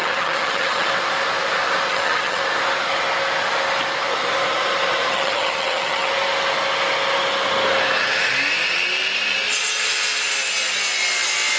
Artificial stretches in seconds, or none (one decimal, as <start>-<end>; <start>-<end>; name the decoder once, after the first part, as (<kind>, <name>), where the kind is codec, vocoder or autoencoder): 0.0-0.9 (vocoder, HiFi-GAN); 1.9-2.4; 5.1-6.1